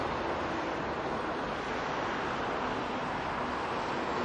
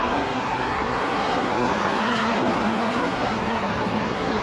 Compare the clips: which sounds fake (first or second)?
second